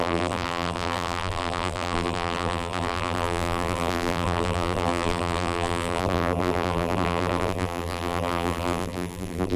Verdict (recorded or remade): remade